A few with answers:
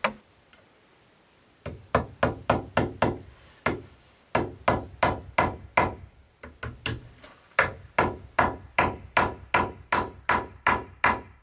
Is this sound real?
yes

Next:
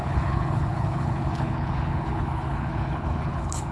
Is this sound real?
no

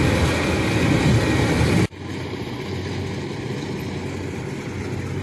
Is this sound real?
yes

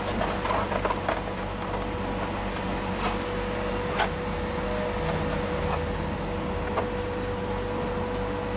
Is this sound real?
yes